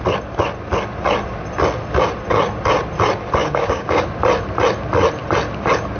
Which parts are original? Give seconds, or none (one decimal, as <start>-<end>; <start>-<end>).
0.0-3.4; 4.0-6.0